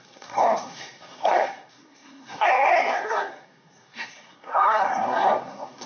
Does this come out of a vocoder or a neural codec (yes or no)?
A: yes